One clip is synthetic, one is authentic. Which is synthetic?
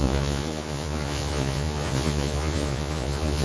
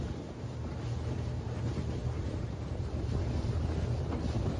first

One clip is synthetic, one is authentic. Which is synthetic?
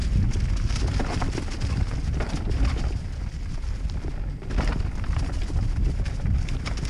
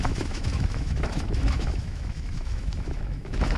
second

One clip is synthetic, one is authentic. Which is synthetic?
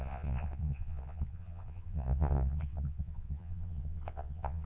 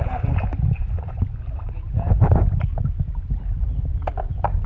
first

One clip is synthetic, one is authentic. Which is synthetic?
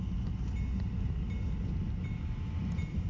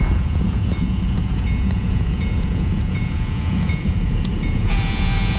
second